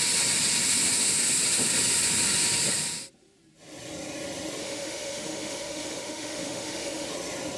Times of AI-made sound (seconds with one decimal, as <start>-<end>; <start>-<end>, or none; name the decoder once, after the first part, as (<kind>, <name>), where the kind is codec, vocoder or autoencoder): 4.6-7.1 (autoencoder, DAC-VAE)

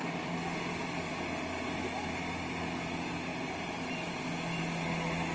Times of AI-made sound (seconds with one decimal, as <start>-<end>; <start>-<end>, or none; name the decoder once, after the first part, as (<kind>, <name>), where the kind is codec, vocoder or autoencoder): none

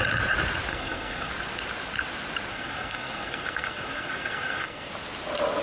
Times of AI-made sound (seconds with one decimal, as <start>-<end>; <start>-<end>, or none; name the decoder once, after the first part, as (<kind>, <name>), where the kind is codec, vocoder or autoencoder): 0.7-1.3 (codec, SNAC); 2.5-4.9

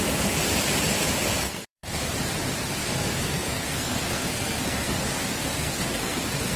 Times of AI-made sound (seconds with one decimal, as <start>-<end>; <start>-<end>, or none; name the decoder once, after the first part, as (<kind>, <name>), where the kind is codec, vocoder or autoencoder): 1.4-2.1 (codec, SNAC); 2.8-6.6